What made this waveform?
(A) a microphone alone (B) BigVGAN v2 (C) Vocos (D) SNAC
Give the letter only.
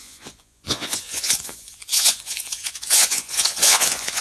C